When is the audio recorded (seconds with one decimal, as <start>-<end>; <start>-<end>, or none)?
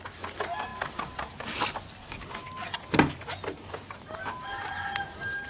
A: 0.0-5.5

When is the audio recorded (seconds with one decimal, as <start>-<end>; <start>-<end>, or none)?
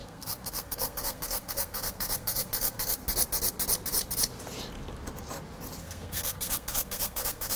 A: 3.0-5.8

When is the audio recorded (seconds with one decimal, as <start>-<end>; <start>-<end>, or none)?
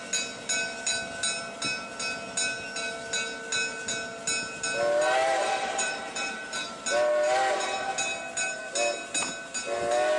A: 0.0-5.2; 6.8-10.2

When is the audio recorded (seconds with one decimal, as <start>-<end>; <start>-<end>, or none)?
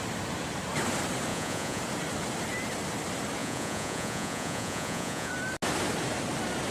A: 0.0-1.3; 1.8-3.4; 5.3-6.7